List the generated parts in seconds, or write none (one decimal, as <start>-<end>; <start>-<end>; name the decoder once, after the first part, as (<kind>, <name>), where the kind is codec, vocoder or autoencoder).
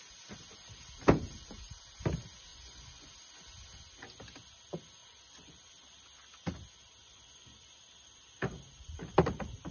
2.5-3.1 (vocoder, Vocos); 5.0-5.7; 7.0-7.8